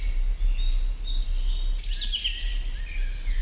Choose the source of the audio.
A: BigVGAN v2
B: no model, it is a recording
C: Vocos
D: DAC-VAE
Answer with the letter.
B